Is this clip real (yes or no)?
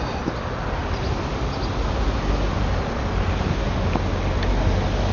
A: yes